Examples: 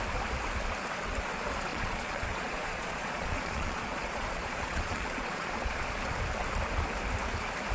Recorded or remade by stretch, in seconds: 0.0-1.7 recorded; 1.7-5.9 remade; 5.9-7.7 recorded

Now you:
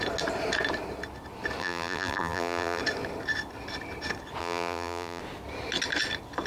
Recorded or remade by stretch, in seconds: 0.0-1.6 recorded; 1.6-2.8 remade; 2.8-4.4 recorded; 4.4-5.2 remade; 5.2-6.5 recorded